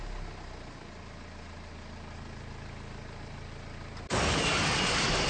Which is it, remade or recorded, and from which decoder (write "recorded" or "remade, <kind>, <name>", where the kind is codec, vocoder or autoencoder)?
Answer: recorded